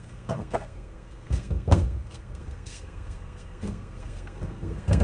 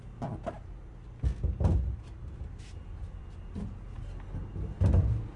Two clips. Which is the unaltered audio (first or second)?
second